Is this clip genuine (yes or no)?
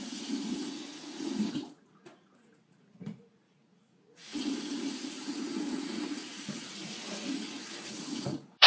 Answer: no